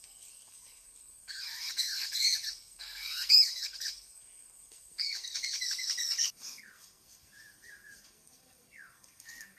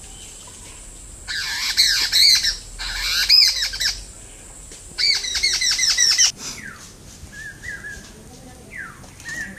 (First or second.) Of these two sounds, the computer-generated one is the first